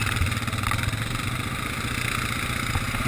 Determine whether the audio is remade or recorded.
recorded